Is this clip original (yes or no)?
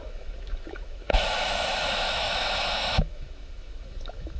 no